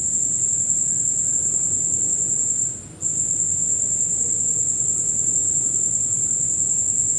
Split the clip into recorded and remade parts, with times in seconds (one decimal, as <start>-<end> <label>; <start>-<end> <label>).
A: 0.0-7.2 recorded

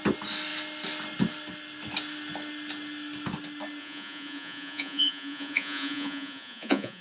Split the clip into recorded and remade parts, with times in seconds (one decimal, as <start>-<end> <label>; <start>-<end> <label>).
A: 0.0-3.8 recorded; 3.8-7.0 remade

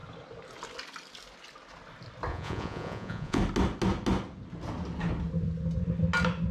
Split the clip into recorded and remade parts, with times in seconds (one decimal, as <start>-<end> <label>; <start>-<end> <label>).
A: 0.0-2.3 recorded; 2.3-3.4 remade; 3.4-6.5 recorded

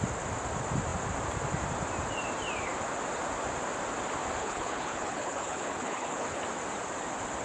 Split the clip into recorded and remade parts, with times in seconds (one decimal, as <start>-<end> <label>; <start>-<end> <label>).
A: 0.0-4.4 recorded; 4.4-6.4 remade; 6.4-7.4 recorded

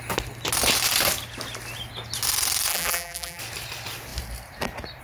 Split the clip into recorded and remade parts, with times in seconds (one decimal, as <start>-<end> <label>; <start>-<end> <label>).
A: 0.0-2.7 recorded; 2.7-3.4 remade; 3.4-5.0 recorded

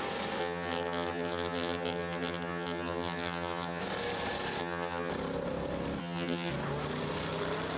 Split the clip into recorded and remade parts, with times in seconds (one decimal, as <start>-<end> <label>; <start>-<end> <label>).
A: 0.0-0.4 recorded; 0.4-3.8 remade; 3.8-4.6 recorded; 4.6-5.1 remade; 5.1-6.0 recorded; 6.0-6.5 remade; 6.5-7.8 recorded

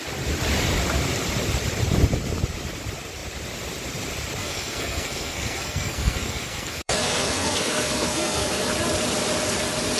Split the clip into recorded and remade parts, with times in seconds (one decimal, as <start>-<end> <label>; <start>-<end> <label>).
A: 0.0-4.4 recorded; 4.4-8.7 remade; 8.7-10.0 recorded